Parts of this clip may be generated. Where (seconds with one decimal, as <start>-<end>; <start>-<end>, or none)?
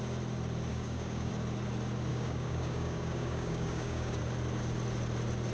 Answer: 0.7-1.3; 2.1-4.2